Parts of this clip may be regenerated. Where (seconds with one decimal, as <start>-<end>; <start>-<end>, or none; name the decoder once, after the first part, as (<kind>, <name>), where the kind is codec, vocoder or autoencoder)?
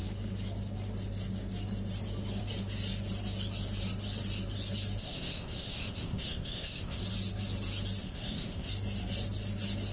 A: 5.0-7.0 (codec, ZipCodec); 8.0-8.7